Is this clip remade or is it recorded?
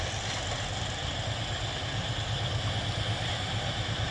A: recorded